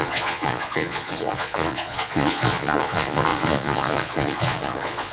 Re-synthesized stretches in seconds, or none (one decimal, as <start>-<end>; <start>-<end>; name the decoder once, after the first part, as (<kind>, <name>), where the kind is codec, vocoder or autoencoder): 0.0-5.1 (vocoder, Vocos)